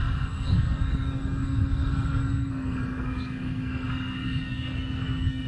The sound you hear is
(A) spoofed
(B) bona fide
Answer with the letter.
A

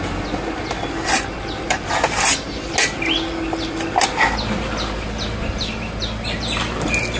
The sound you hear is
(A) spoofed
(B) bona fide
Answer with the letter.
B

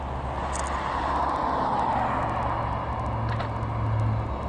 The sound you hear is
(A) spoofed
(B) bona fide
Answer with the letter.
B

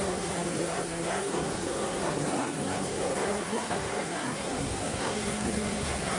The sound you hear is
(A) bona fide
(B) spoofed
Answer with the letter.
B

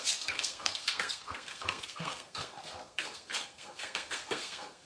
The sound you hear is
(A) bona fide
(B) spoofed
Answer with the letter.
B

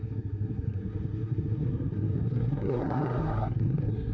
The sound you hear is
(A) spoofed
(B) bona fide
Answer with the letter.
A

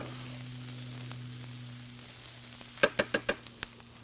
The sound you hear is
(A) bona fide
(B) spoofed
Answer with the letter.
A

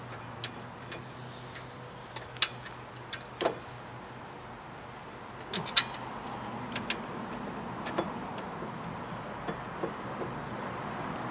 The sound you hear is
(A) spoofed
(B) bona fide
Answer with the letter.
B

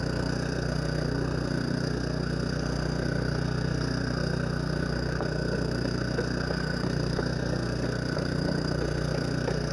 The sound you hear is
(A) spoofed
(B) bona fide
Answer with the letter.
A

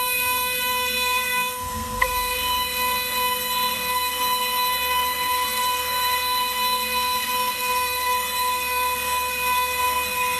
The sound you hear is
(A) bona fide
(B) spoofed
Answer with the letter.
B